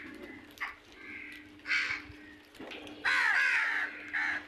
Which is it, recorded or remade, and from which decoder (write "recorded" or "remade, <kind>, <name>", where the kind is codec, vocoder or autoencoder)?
recorded